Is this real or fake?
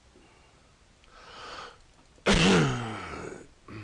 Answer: real